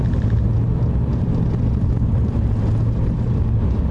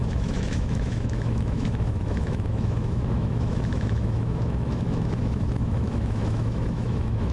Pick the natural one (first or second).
first